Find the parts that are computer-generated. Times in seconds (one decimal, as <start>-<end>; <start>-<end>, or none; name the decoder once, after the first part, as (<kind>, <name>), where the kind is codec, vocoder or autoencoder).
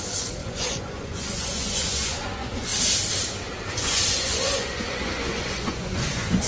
0.0-2.7 (vocoder, Vocos); 3.7-6.5